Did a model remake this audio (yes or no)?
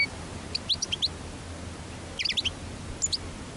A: no